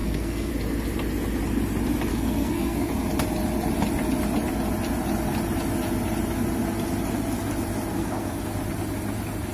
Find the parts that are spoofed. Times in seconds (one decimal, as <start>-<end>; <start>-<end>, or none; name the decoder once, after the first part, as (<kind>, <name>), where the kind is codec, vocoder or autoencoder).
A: 0.0-0.5 (codec, SNAC); 2.1-2.9; 7.9-8.4